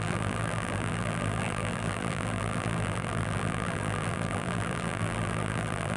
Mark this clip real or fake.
fake